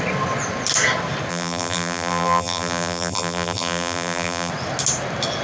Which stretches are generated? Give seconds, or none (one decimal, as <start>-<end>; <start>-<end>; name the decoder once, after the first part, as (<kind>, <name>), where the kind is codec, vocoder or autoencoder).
1.3-4.5 (vocoder, BigVGAN v2)

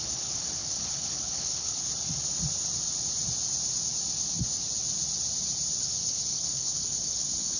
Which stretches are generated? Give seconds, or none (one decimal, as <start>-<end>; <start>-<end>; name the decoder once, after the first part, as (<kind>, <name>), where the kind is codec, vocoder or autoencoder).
0.0-1.9 (codec, HILCodec); 5.8-7.6

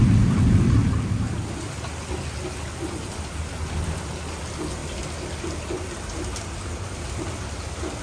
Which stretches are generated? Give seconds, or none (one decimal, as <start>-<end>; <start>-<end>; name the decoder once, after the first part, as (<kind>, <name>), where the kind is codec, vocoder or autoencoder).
none

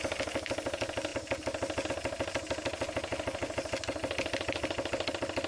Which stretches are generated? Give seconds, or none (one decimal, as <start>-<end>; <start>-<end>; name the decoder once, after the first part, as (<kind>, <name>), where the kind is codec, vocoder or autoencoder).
3.1-5.1 (vocoder, BigVGAN v2)